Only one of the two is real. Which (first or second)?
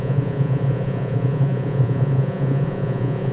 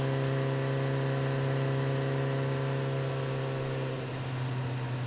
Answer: second